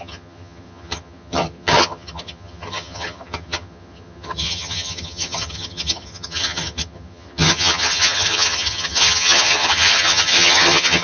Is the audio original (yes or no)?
no